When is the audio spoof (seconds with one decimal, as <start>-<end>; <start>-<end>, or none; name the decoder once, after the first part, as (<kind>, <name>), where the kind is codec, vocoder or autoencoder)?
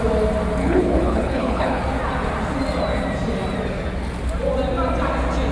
0.6-1.8 (codec, HILCodec)